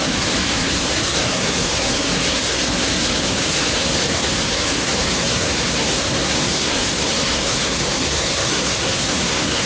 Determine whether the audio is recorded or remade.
remade